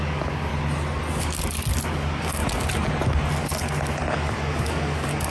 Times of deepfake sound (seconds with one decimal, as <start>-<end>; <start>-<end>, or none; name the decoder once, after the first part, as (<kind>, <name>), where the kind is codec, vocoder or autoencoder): 0.0-0.5 (codec, DAC); 1.2-2.4; 3.4-5.3